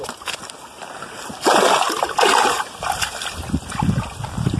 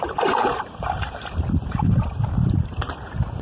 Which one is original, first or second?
first